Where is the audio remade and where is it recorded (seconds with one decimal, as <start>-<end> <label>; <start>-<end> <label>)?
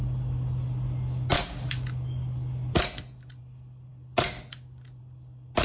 0.0-5.6 recorded